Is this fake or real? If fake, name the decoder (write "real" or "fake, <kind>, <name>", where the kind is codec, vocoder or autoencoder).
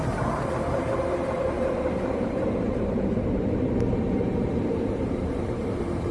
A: fake, vocoder, BigVGAN v2